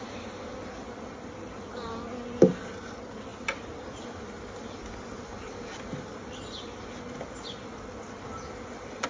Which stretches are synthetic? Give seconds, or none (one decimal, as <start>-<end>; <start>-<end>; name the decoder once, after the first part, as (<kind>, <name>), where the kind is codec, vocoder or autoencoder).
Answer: none